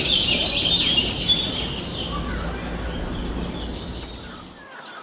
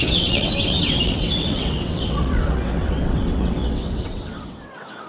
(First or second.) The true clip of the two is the first